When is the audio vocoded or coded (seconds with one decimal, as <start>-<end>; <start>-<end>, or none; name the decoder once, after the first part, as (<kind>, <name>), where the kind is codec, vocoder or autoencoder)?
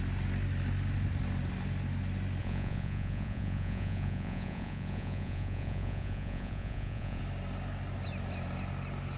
2.4-7.2 (vocoder, Vocos)